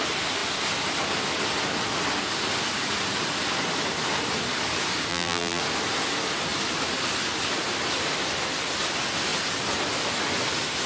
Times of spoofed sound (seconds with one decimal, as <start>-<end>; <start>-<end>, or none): 5.1-5.6